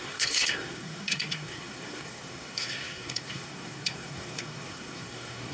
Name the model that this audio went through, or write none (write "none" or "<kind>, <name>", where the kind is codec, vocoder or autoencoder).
codec, SNAC